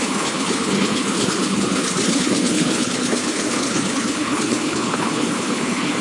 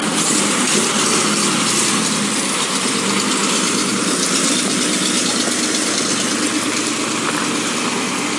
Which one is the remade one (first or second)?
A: first